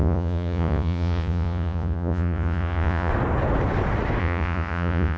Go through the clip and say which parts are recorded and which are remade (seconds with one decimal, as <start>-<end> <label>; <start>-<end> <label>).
0.0-3.1 remade; 3.1-4.2 recorded; 4.2-5.2 remade